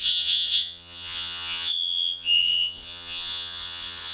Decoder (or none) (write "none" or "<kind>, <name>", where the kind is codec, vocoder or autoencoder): vocoder, Vocos